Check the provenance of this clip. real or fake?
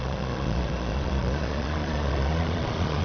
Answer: fake